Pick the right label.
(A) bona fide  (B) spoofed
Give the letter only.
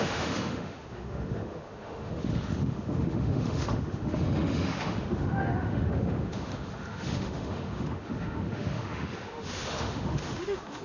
B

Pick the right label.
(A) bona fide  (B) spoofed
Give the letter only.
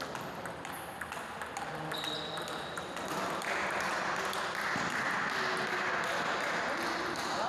A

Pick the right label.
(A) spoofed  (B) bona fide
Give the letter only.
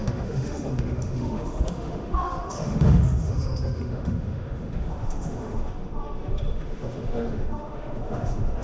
A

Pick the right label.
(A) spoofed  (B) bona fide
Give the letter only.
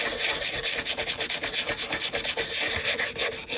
B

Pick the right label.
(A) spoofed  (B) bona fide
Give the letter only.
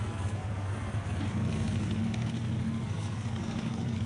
A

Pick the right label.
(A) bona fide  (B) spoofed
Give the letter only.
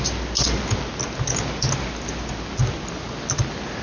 A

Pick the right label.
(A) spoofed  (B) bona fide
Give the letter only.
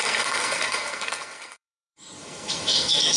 A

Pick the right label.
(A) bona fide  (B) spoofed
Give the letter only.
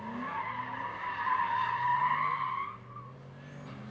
A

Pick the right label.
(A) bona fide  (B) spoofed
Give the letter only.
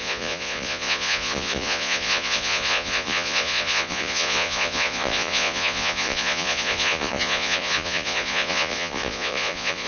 B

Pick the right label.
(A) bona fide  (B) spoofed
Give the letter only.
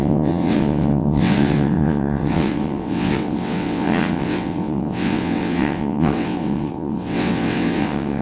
B